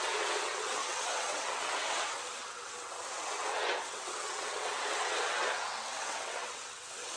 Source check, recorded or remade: remade